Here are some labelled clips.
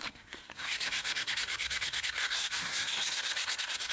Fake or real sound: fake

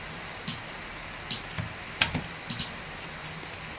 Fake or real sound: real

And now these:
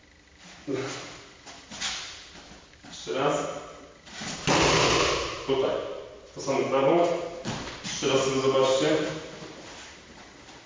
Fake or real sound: real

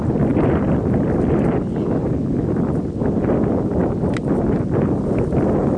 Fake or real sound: real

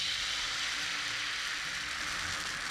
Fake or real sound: real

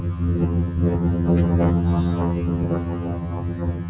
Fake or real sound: fake